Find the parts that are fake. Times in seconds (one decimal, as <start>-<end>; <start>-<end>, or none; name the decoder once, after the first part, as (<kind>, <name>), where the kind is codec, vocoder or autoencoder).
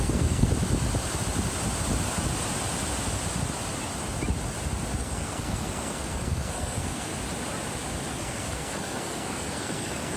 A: 0.0-0.5 (codec, SNAC); 5.0-7.1; 8.1-10.2